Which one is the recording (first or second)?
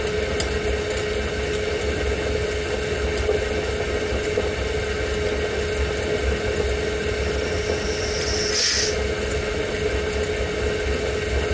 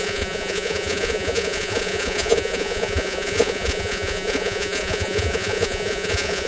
first